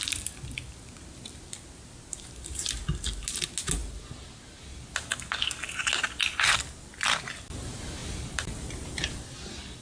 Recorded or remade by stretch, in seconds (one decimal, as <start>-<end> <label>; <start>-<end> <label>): 0.0-2.1 recorded; 2.1-2.7 remade; 2.7-8.0 recorded; 8.0-9.2 remade; 9.2-9.8 recorded